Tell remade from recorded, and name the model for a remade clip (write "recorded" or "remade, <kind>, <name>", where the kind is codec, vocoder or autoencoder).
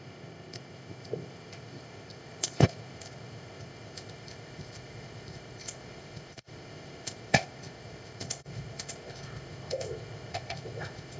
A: remade, codec, ZipCodec